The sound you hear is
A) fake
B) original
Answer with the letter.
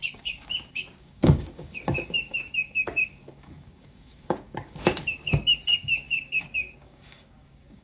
A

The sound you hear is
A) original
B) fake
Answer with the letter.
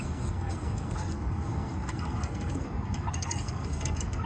B